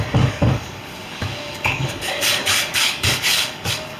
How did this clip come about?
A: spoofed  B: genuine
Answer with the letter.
A